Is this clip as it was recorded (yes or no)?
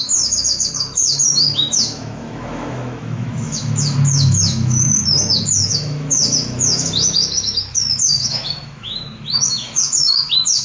no